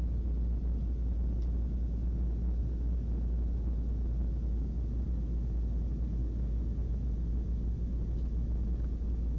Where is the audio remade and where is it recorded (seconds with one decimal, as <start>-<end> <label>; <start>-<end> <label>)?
0.0-9.4 recorded